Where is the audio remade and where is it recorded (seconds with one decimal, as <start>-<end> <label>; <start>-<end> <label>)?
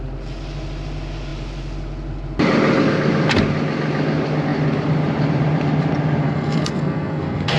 0.0-6.2 recorded; 6.2-7.6 remade